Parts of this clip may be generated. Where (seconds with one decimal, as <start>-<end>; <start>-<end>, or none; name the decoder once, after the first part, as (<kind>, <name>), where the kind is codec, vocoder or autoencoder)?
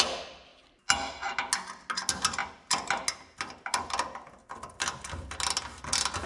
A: none